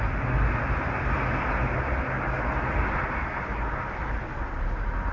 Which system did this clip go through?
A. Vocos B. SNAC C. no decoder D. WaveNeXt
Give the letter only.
C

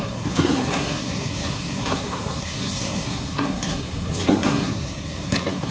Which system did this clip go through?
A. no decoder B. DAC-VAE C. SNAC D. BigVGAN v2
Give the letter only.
C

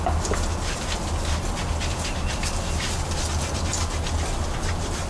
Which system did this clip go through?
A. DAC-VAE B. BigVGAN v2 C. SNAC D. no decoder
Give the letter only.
D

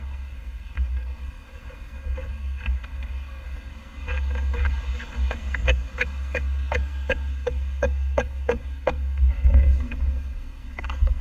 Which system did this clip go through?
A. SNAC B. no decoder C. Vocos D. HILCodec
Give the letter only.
A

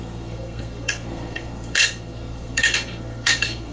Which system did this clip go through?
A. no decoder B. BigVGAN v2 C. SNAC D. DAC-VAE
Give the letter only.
C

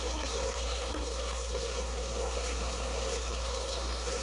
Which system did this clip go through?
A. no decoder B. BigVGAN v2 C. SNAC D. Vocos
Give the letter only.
C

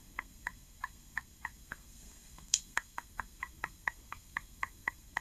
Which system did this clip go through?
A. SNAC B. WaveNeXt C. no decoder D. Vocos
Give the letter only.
A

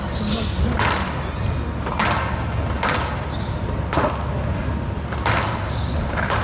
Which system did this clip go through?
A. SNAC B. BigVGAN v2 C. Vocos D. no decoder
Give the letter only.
D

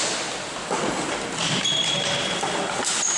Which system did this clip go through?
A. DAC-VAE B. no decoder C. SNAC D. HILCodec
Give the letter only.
B